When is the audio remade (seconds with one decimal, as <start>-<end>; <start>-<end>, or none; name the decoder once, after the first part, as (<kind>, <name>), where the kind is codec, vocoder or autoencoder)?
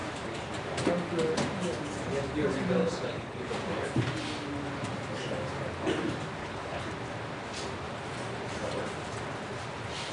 2.8-3.5 (codec, HILCodec); 6.4-6.9